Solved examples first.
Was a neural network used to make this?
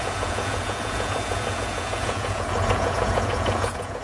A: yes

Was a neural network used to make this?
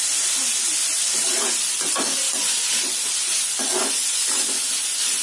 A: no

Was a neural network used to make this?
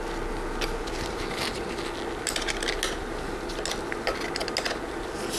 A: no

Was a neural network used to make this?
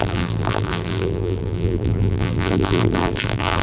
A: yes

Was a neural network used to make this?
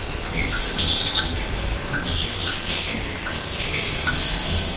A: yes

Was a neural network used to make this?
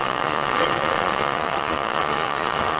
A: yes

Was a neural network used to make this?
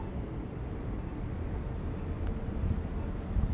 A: no